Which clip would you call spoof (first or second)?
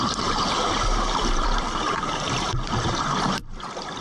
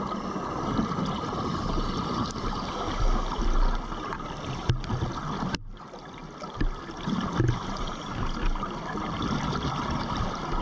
first